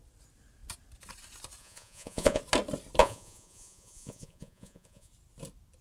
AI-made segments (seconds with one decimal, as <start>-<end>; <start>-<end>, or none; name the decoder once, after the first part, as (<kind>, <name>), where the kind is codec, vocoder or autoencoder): 1.6-2.4 (vocoder, Vocos); 3.0-5.1